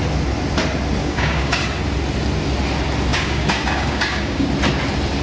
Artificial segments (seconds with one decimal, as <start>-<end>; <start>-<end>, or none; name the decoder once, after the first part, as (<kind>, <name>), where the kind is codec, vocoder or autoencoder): 1.0-1.6 (codec, DAC); 3.1-4.5